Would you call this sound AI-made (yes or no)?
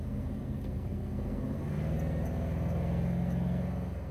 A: yes